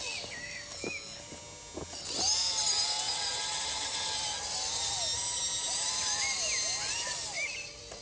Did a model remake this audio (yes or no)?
no